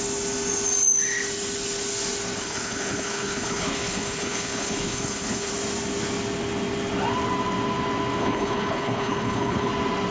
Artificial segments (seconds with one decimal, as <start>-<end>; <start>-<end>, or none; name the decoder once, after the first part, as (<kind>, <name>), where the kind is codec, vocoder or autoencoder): 2.4-5.5 (codec, HILCodec); 8.2-9.7